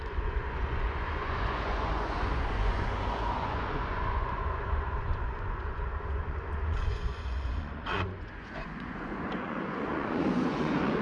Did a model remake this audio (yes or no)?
yes